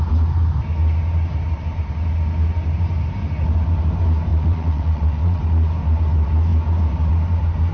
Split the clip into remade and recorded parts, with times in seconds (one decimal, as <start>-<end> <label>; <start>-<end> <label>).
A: 0.0-4.3 recorded; 4.3-5.4 remade; 5.4-7.7 recorded